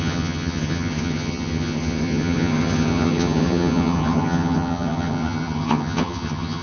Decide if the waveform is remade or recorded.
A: remade